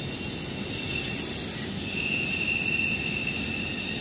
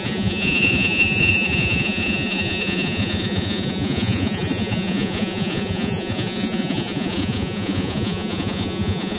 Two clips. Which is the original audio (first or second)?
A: first